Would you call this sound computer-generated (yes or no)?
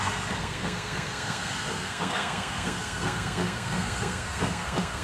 yes